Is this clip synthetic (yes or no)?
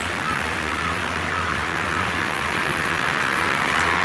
yes